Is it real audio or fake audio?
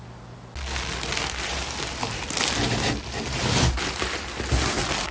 real